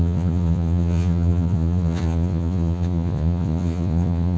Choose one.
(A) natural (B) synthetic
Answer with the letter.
B